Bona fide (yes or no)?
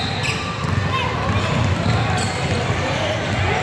yes